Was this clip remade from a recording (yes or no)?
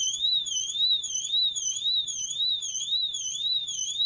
no